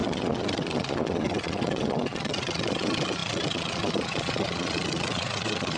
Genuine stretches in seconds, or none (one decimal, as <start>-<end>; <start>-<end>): none